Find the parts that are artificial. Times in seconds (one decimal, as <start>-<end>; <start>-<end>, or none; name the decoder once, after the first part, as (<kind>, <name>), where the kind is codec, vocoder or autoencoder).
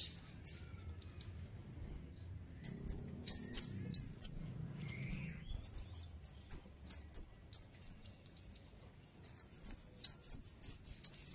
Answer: 3.9-5.1 (vocoder, Vocos); 7.6-9.5